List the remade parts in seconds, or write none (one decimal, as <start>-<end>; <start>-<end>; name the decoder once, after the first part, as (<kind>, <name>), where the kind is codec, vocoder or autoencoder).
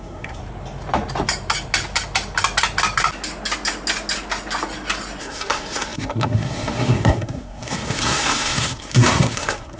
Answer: 0.0-0.4 (codec, SNAC); 5.2-9.8